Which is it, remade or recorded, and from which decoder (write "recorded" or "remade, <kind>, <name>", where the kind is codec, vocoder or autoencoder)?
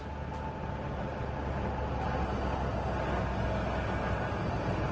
recorded